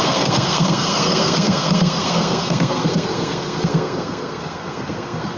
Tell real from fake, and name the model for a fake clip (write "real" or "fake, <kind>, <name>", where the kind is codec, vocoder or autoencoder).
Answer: fake, codec, SNAC